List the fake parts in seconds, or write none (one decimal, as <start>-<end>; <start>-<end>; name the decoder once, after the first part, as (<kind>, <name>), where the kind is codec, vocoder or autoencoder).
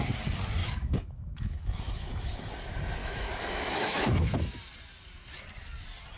0.6-2.5 (autoencoder, DAC-VAE); 3.0-4.6